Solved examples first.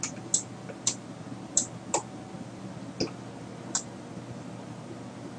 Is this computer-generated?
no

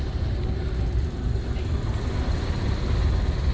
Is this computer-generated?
no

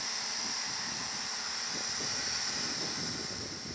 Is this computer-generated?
no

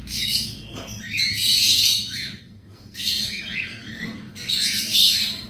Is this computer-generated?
yes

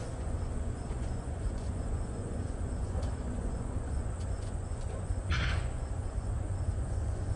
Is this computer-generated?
yes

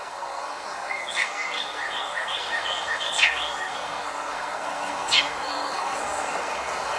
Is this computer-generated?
yes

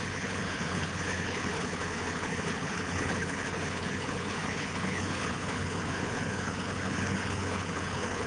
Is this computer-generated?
yes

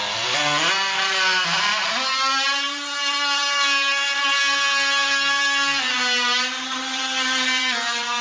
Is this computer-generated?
yes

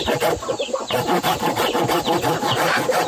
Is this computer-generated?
no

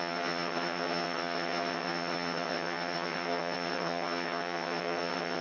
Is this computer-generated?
yes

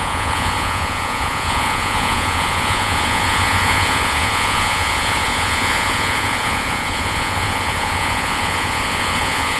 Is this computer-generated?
yes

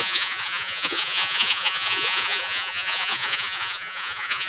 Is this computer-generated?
yes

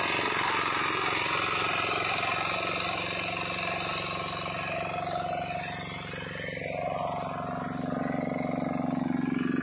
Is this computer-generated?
no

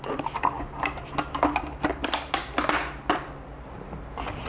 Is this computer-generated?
no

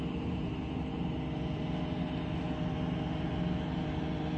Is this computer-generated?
no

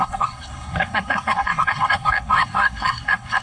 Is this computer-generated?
yes